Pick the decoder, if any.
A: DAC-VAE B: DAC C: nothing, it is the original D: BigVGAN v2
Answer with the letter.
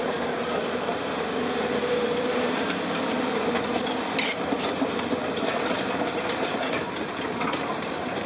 D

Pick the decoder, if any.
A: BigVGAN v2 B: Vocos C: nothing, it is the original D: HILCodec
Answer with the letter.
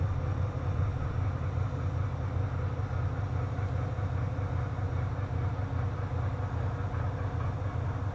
C